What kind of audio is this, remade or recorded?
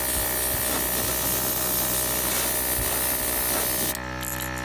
recorded